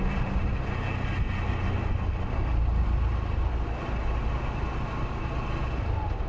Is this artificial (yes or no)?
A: no